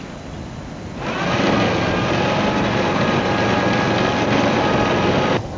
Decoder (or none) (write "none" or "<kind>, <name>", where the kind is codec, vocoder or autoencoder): none